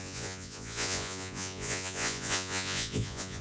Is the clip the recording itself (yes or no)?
no